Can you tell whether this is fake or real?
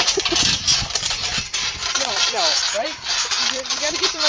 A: fake